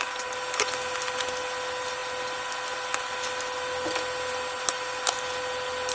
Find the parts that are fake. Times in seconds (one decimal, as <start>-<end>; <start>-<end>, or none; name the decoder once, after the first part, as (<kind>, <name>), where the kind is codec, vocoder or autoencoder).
none